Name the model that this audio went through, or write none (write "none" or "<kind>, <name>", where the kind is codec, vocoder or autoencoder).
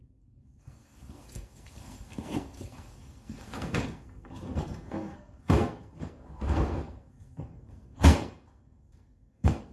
codec, SNAC